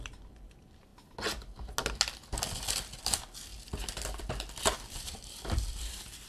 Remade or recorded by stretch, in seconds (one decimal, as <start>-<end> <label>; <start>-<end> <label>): 0.0-0.9 remade; 0.9-3.0 recorded; 3.0-3.5 remade; 3.5-4.6 recorded; 4.6-6.3 remade